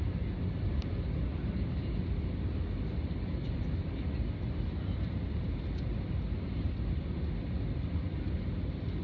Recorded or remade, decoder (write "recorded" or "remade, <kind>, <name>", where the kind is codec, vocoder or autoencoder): recorded